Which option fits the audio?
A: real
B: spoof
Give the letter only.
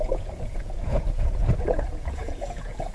B